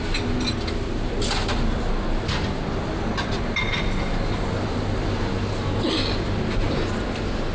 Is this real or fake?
real